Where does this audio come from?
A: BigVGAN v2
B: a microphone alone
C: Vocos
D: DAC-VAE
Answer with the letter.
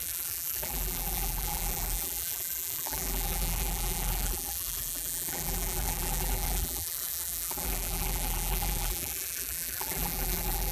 A